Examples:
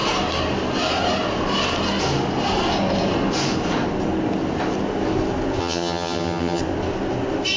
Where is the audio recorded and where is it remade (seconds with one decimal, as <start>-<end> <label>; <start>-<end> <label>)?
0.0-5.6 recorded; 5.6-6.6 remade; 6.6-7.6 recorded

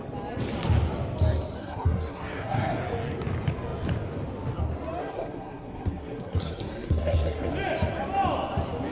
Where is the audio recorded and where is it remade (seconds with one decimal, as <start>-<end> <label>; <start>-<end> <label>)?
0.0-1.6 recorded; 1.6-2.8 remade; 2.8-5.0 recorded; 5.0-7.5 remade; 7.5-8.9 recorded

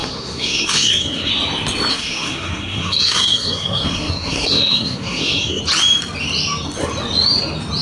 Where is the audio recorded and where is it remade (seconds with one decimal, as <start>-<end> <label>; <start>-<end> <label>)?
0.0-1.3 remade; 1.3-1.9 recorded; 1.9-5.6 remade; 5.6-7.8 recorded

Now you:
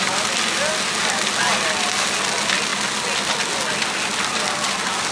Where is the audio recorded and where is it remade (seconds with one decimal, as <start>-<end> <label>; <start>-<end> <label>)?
0.0-5.1 recorded

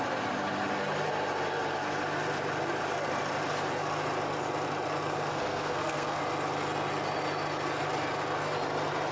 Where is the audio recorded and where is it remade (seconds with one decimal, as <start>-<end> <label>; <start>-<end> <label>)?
0.0-5.3 recorded; 5.3-6.2 remade; 6.2-9.1 recorded